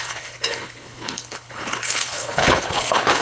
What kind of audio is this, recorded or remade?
remade